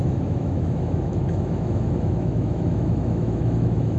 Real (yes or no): no